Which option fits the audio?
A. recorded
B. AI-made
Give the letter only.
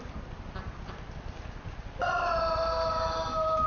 A